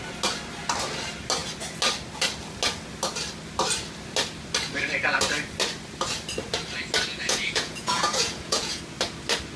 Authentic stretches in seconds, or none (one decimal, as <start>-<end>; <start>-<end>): 0.0-7.1; 8.8-9.6